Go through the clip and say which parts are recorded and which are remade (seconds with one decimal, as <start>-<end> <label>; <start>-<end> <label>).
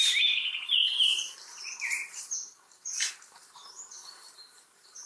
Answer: 0.0-5.1 remade